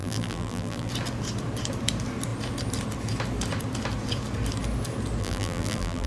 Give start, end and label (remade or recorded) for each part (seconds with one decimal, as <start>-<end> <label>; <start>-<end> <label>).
0.0-0.9 remade; 0.9-5.2 recorded; 5.2-6.1 remade